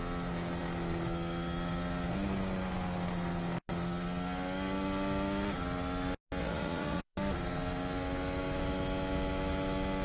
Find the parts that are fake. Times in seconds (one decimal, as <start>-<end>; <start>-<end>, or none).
6.4-7.0